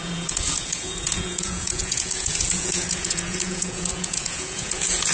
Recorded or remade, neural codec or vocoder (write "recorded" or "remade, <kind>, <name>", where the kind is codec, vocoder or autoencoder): remade, vocoder, Vocos